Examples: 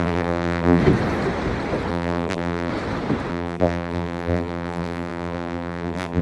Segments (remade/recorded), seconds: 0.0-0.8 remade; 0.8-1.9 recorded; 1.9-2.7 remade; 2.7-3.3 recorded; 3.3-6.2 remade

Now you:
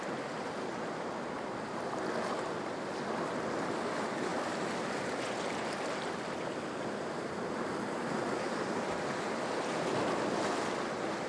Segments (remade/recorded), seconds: 0.0-4.3 recorded; 4.3-5.0 remade; 5.0-11.3 recorded

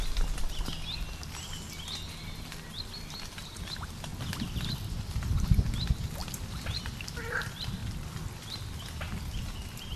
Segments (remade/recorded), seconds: 0.0-2.2 recorded; 2.2-3.0 remade; 3.0-6.2 recorded; 6.2-7.1 remade; 7.1-10.0 recorded

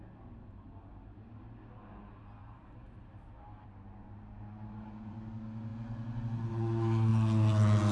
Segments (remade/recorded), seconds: 0.0-2.4 recorded; 2.4-5.3 remade; 5.3-7.9 recorded